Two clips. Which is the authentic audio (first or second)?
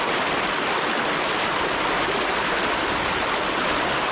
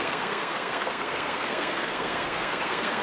first